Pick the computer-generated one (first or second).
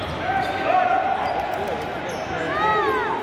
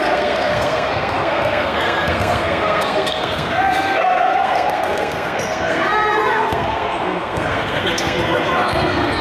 second